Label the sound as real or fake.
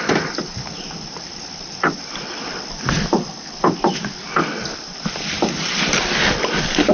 fake